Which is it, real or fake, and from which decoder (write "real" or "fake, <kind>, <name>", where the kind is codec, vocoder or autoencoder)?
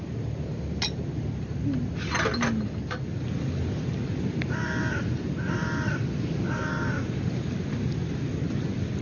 real